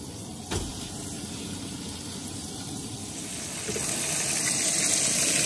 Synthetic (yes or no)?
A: no